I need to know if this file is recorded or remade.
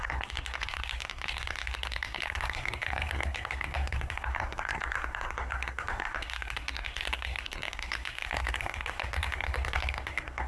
remade